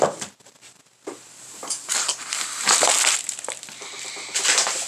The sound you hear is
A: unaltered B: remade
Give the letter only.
B